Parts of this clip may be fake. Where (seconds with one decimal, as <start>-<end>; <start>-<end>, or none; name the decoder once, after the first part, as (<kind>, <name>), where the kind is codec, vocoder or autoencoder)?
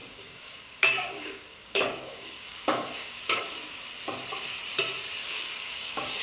0.0-3.4 (codec, DAC); 5.2-6.2